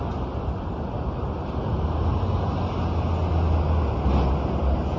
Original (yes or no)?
yes